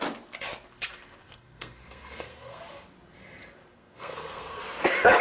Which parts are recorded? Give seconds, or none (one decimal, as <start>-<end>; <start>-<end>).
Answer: 0.0-1.2; 2.6-3.7; 4.6-5.2

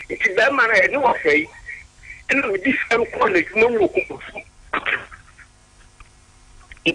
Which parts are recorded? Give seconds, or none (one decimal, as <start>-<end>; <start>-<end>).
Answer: 0.7-1.1; 4.1-6.9

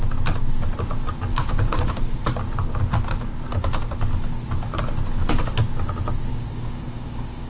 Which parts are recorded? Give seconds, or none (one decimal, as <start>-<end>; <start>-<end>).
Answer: 0.0-1.3; 2.2-6.3

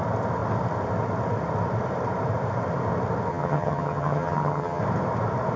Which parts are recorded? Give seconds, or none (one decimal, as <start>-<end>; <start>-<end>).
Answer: 0.0-3.3; 4.8-5.6

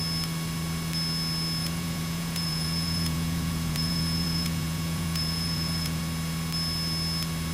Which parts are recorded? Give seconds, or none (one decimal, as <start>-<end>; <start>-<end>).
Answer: 0.0-1.6; 6.0-7.5